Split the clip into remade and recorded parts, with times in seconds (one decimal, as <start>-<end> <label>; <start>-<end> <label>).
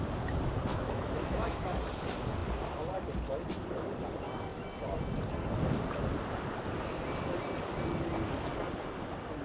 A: 0.0-0.7 recorded; 0.7-1.6 remade; 1.6-9.4 recorded